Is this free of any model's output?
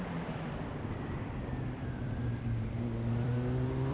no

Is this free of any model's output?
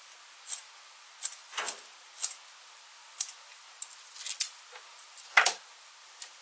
yes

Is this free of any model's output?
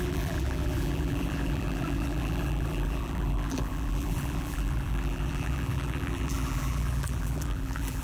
no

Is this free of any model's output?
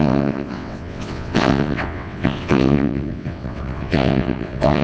no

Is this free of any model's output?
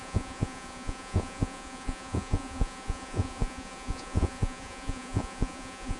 no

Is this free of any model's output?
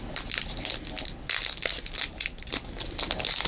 yes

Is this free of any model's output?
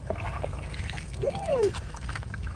no